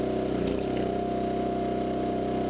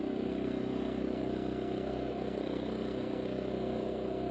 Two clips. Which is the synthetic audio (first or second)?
second